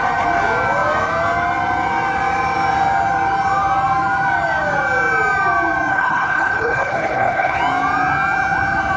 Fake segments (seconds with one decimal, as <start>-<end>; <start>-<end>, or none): 5.9-7.6